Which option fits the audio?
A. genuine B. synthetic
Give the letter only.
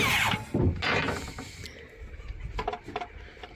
A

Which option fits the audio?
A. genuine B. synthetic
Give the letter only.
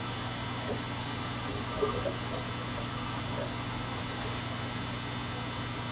A